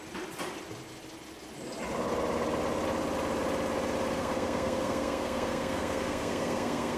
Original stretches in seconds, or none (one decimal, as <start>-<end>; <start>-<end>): 0.0-4.2